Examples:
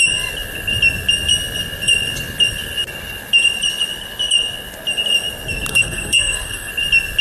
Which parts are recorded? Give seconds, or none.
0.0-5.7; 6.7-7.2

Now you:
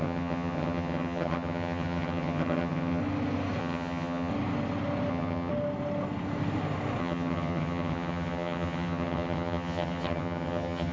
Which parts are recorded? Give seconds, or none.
3.0-3.6; 4.3-5.1; 5.5-7.0